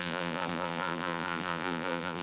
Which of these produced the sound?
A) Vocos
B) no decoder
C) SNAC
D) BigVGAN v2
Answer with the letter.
D